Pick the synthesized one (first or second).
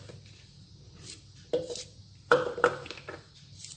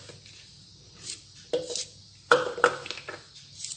first